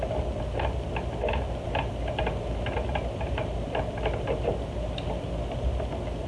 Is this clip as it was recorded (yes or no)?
yes